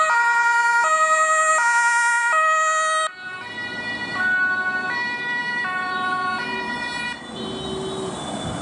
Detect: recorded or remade recorded